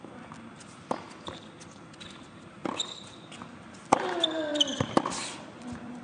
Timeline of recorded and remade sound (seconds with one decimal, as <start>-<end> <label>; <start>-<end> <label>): 0.0-2.6 recorded; 2.6-3.7 remade; 3.7-4.5 recorded; 4.5-6.0 remade